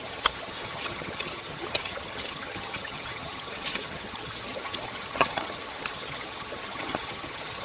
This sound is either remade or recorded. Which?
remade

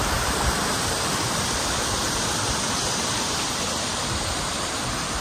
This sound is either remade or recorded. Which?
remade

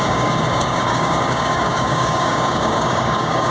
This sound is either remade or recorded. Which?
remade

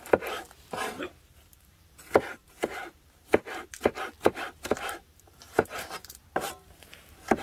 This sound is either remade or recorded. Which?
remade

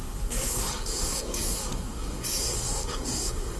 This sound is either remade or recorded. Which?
remade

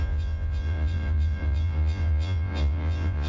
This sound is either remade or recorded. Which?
remade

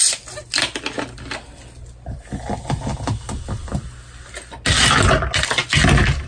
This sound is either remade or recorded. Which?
recorded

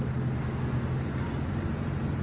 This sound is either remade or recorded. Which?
recorded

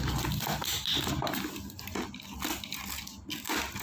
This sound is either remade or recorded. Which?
recorded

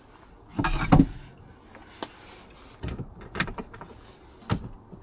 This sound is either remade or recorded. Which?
recorded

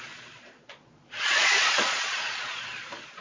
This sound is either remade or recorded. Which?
remade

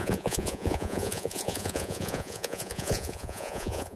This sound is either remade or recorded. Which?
remade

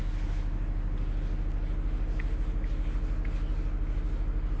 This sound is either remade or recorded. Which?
recorded